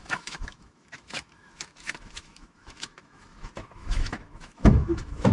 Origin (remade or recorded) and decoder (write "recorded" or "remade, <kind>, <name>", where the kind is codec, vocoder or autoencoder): remade, autoencoder, DAC-VAE